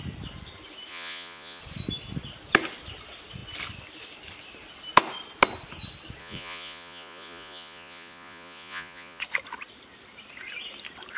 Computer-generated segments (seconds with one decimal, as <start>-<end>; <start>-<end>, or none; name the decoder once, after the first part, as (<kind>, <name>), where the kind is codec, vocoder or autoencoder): 0.9-1.6 (vocoder, Vocos); 6.2-9.2